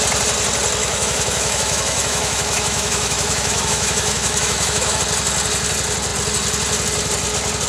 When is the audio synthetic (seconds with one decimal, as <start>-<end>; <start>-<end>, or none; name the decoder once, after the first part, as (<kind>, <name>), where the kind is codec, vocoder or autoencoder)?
0.8-5.0 (autoencoder, DAC-VAE)